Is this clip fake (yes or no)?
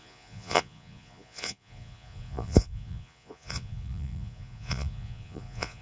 yes